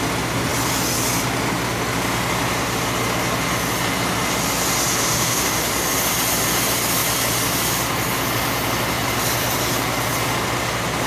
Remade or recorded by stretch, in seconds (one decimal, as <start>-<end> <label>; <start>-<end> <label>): 0.0-5.0 recorded; 5.0-5.5 remade; 5.5-11.1 recorded